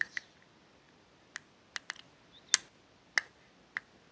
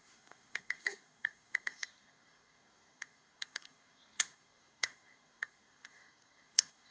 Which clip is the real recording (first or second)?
first